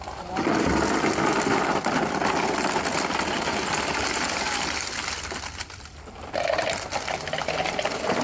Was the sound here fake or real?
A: real